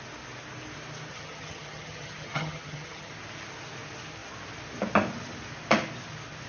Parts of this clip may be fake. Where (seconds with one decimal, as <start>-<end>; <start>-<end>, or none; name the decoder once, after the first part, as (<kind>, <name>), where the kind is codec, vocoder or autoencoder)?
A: 1.1-3.1 (vocoder, HiFi-GAN)